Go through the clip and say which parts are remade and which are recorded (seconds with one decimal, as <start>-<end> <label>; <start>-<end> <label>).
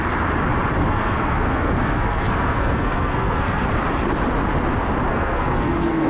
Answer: 0.0-0.8 recorded; 0.8-3.7 remade; 3.7-5.1 recorded; 5.1-6.1 remade